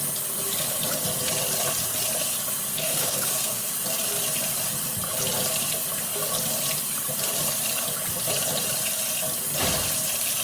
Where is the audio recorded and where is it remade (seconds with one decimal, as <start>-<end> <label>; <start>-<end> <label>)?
0.0-2.7 recorded; 2.7-3.7 remade; 3.7-10.4 recorded